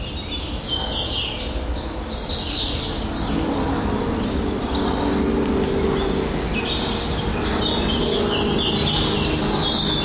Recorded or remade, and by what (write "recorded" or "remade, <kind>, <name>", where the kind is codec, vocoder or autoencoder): recorded